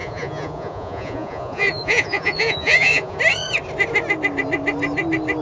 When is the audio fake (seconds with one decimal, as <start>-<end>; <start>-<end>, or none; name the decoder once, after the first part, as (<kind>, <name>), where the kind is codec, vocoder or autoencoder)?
0.0-3.2 (vocoder, Vocos)

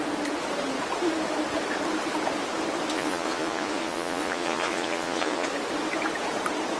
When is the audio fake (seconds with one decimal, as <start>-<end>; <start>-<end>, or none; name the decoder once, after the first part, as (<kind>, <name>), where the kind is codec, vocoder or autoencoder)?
2.9-5.5 (vocoder, Vocos)

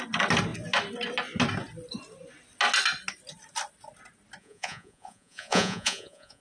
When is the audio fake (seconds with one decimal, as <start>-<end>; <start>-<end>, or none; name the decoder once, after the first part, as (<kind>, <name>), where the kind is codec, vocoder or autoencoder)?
4.4-6.4 (vocoder, Vocos)

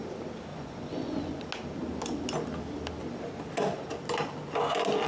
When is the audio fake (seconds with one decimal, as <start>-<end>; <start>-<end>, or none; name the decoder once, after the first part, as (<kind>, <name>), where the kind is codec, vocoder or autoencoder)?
0.5-1.4 (vocoder, Vocos)

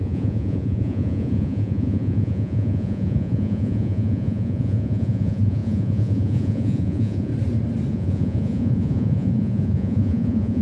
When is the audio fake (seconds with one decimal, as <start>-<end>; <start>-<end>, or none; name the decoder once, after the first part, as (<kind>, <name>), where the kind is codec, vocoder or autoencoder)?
0.0-7.3 (vocoder, Vocos); 7.9-10.6

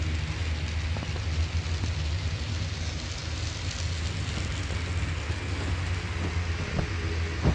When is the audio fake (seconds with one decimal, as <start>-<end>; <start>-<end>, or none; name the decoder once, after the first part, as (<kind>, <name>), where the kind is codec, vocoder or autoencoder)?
none

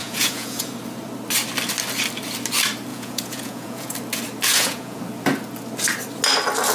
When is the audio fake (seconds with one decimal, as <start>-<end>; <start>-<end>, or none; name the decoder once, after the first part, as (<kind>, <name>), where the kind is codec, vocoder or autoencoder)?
0.0-0.7 (vocoder, Vocos); 2.9-3.9; 4.5-5.0

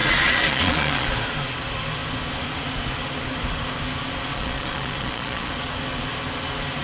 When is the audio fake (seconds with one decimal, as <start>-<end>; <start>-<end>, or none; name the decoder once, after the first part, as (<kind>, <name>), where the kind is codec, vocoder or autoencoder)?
0.0-1.1 (vocoder, Vocos); 4.3-5.5